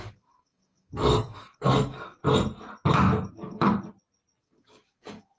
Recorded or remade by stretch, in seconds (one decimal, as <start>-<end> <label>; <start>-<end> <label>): 0.0-2.2 remade; 2.2-3.3 recorded; 3.3-3.7 remade; 3.7-4.4 recorded; 4.4-5.4 remade